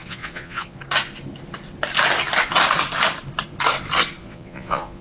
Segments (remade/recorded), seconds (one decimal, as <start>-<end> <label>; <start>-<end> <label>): 0.0-0.8 remade; 0.8-4.2 recorded; 4.2-5.0 remade